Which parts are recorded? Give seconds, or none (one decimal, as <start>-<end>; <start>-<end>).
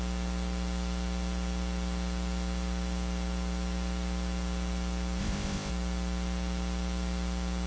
0.0-5.2; 5.7-7.7